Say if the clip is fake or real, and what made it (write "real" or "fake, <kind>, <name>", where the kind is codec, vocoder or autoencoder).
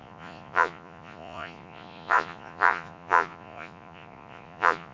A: fake, vocoder, Vocos